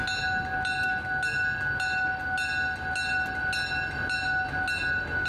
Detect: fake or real real